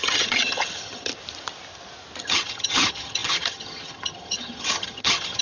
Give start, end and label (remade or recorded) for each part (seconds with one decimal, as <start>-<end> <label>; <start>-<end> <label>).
0.0-1.1 remade; 1.1-2.2 recorded; 2.2-5.4 remade